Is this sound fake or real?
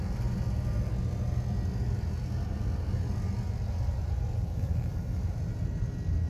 real